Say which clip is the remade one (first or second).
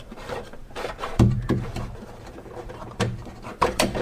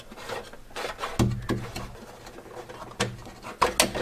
first